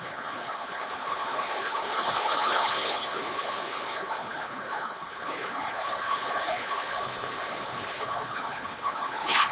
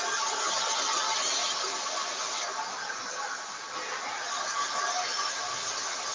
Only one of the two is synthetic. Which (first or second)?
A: first